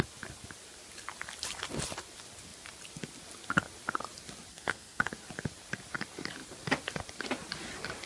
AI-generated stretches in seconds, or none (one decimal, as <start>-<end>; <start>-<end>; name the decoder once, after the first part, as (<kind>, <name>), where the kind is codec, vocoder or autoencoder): 4.5-5.0 (codec, SNAC)

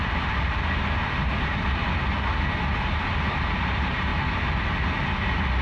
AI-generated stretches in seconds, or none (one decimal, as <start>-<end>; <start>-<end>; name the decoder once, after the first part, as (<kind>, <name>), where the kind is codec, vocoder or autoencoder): 0.0-1.8 (vocoder, BigVGAN v2); 2.8-4.1

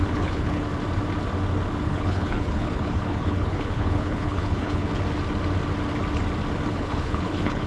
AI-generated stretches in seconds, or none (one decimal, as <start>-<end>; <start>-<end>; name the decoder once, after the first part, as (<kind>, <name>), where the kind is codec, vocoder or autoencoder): 0.0-0.6 (codec, HILCodec); 1.8-4.9; 6.7-7.7

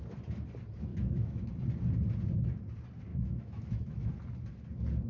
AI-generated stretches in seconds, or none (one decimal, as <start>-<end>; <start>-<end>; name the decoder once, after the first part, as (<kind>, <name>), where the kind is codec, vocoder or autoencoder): 0.9-1.5 (autoencoder, DAC-VAE); 3.1-4.1

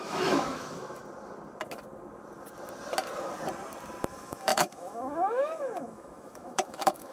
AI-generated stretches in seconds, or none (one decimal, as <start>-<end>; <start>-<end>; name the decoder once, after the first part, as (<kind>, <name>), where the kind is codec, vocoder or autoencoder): 0.0-1.0 (autoencoder, DAC-VAE); 4.1-7.1

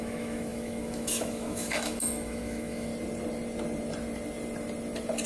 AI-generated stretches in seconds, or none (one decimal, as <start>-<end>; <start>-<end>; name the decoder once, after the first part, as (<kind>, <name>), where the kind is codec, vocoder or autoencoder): 0.0-2.9 (autoencoder, DAC-VAE)